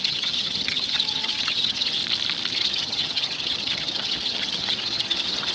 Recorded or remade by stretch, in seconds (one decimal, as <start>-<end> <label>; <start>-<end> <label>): 0.0-2.0 remade; 2.0-2.5 recorded; 2.5-5.5 remade